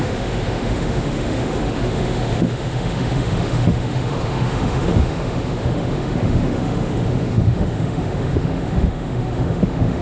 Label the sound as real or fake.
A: fake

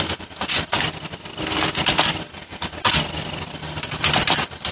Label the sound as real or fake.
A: real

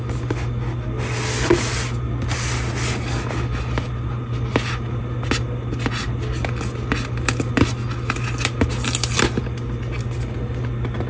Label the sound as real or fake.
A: real